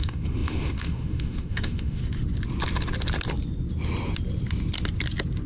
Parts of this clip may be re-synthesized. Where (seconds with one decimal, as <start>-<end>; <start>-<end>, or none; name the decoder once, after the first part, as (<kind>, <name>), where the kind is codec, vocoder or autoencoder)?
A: 0.0-2.0 (autoencoder, DAC-VAE)